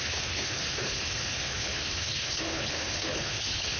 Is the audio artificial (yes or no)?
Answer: yes